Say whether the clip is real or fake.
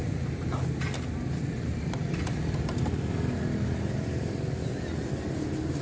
real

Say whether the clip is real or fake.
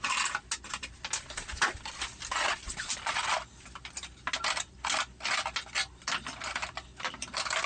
real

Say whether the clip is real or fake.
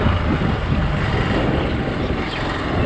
real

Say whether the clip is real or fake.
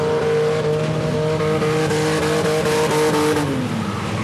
real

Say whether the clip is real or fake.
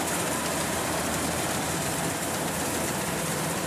fake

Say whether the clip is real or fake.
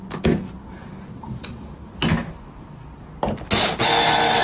real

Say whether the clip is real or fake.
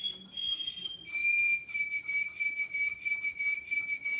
real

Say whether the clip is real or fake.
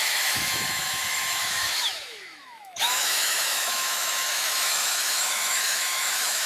fake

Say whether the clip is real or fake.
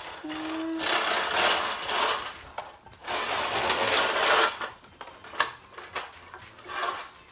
real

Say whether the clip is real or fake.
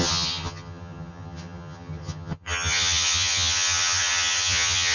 fake